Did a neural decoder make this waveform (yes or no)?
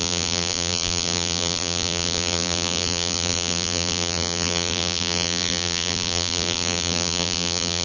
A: yes